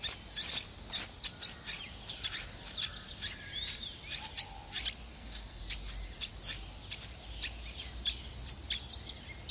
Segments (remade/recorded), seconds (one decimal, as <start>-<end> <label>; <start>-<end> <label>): 0.0-5.1 recorded; 5.1-5.6 remade; 5.6-9.5 recorded

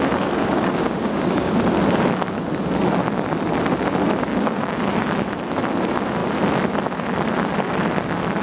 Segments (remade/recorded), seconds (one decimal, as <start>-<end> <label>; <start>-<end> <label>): 0.0-0.4 recorded; 0.4-1.5 remade; 1.5-4.3 recorded; 4.3-4.8 remade; 4.8-8.4 recorded

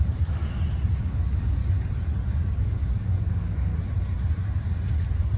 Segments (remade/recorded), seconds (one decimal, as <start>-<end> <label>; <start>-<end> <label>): 0.0-0.4 remade; 0.4-1.0 recorded; 1.0-1.6 remade; 1.6-2.6 recorded; 2.6-3.7 remade; 3.7-5.4 recorded

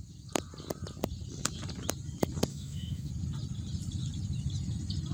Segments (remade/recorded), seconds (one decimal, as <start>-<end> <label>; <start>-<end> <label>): 0.0-2.5 recorded; 2.5-3.1 remade; 3.1-5.1 recorded

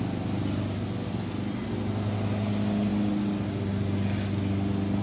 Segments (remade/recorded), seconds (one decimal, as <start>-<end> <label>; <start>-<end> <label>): 0.0-5.0 recorded

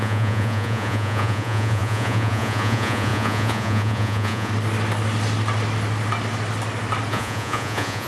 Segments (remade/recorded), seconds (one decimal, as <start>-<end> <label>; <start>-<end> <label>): 0.0-4.5 remade; 4.5-7.1 recorded; 7.1-8.1 remade

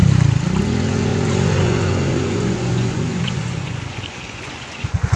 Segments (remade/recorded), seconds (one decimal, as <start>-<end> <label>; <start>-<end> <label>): 0.0-0.6 recorded; 0.6-5.2 remade

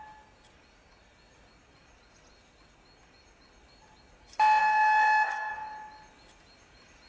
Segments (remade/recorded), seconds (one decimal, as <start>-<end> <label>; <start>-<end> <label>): 0.0-4.6 recorded; 4.6-5.5 remade; 5.5-7.1 recorded